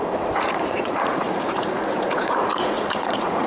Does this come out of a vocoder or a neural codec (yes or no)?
yes